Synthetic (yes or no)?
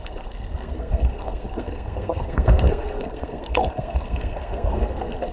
yes